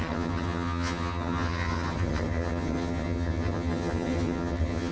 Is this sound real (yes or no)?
no